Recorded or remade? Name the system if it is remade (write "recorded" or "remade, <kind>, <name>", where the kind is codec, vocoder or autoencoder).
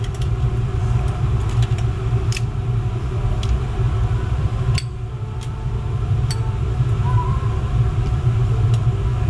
remade, vocoder, BigVGAN v2